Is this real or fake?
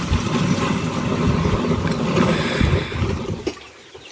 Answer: real